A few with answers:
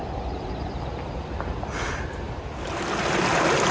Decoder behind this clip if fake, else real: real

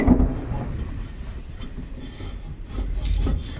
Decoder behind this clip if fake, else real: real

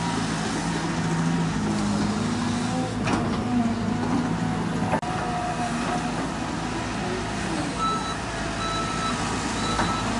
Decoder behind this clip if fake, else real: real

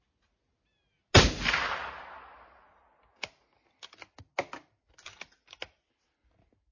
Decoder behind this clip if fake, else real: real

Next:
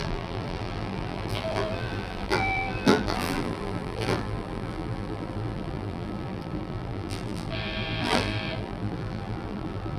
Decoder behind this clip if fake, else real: fake, vocoder, BigVGAN v2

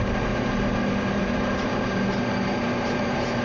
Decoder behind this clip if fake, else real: fake, vocoder, BigVGAN v2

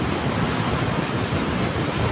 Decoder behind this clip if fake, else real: real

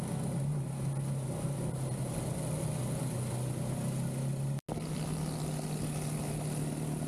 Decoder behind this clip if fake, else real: real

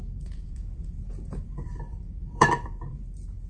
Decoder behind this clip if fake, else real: fake, vocoder, BigVGAN v2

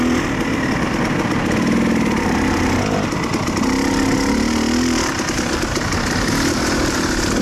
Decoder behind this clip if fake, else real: real